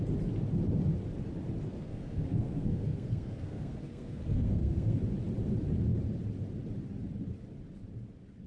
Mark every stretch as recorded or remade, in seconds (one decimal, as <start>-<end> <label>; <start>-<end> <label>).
0.0-1.7 recorded; 1.7-5.0 remade; 5.0-8.5 recorded